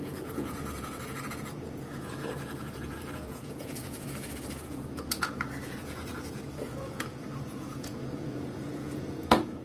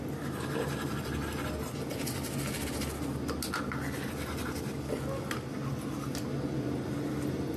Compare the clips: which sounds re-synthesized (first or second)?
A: first